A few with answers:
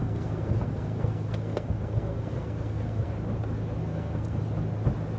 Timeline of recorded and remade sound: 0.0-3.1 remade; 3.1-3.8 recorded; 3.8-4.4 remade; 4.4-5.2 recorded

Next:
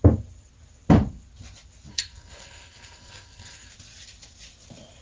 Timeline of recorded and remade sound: 0.0-1.9 recorded; 1.9-3.7 remade; 3.7-5.0 recorded

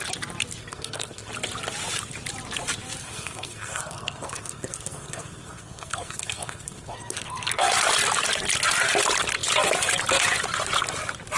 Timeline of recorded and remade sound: 0.0-0.6 recorded; 0.6-1.3 remade; 1.3-3.0 recorded; 3.0-7.7 remade; 7.7-11.4 recorded

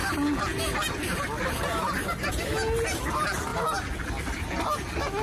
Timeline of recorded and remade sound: 0.0-5.2 recorded

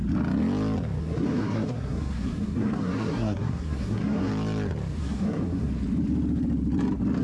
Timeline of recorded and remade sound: 0.0-1.0 recorded; 1.0-4.3 remade; 4.3-5.0 recorded; 5.0-5.7 remade; 5.7-7.2 recorded

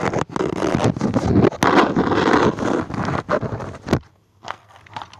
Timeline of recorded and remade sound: 0.0-4.1 recorded; 4.1-4.8 remade; 4.8-5.2 recorded

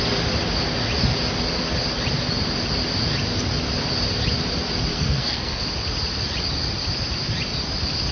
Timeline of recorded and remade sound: 0.0-4.9 recorded; 4.9-5.6 remade; 5.6-8.1 recorded